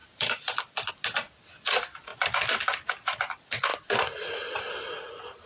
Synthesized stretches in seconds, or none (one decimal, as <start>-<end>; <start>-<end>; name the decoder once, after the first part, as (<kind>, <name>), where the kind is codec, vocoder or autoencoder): 0.0-0.9 (vocoder, BigVGAN v2)